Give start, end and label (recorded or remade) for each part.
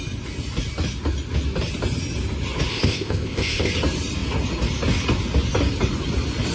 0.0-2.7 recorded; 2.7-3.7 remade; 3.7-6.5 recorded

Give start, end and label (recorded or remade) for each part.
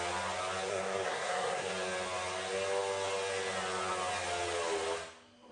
0.0-0.7 recorded; 0.7-1.7 remade; 1.7-5.5 recorded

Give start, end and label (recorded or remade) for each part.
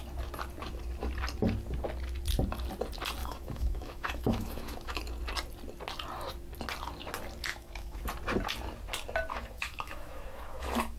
0.0-3.2 recorded; 3.2-5.0 remade; 5.0-7.5 recorded; 7.5-8.0 remade; 8.0-9.3 recorded; 9.3-11.0 remade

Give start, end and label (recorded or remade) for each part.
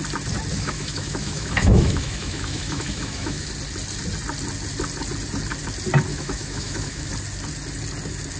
0.0-0.5 recorded; 0.5-3.5 remade; 3.5-6.1 recorded; 6.1-7.1 remade; 7.1-8.4 recorded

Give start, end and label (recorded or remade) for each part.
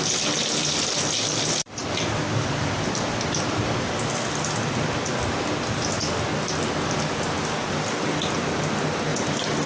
0.0-0.4 recorded; 0.4-3.6 remade; 3.6-9.1 recorded; 9.1-9.7 remade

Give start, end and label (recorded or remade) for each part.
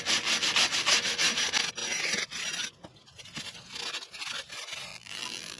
0.0-4.9 recorded; 4.9-5.6 remade